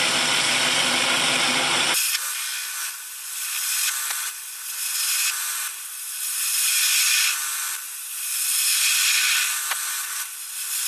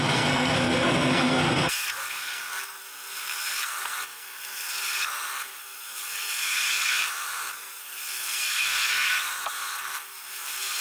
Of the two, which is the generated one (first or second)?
second